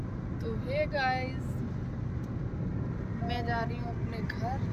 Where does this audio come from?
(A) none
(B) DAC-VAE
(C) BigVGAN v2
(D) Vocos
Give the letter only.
A